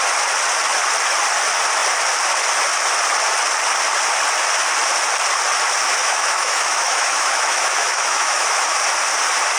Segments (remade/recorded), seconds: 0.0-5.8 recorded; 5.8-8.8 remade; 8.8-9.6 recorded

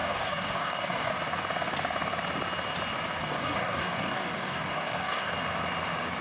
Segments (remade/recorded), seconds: 0.0-1.1 remade; 1.1-3.2 recorded; 3.2-5.3 remade; 5.3-6.2 recorded